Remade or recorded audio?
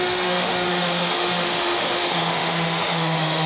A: remade